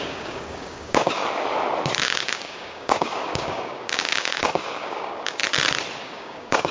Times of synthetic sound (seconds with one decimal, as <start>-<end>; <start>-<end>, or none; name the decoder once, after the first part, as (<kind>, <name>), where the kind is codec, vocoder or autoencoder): 0.0-1.2 (codec, DAC); 2.0-5.4; 6.0-6.7